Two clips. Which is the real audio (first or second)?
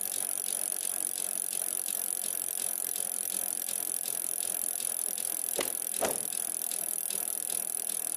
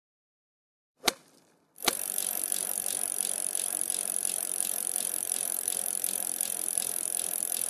first